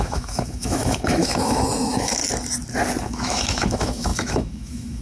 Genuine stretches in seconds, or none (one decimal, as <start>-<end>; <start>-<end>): 2.2-3.0